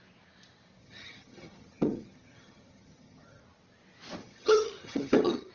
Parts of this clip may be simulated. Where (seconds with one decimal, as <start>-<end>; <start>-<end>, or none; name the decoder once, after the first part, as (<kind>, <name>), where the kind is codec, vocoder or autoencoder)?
0.8-3.4 (vocoder, HiFi-GAN); 4.2-5.5